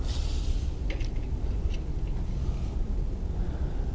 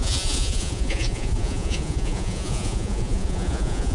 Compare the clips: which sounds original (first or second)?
first